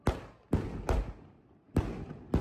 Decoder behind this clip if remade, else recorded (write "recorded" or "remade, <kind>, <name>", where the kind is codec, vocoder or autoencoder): recorded